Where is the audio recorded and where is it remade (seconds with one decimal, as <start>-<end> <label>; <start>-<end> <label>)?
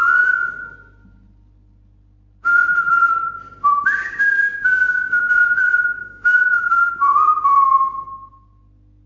0.0-4.0 recorded; 4.0-5.4 remade; 5.4-6.0 recorded; 6.0-6.9 remade; 6.9-9.1 recorded